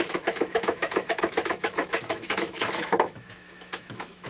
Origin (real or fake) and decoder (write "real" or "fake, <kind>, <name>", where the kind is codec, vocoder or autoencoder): fake, autoencoder, DAC-VAE